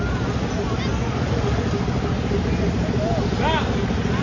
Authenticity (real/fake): real